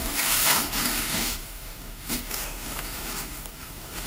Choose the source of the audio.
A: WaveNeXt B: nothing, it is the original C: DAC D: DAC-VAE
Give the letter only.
C